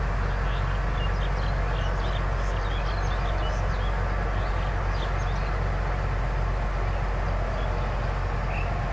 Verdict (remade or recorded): recorded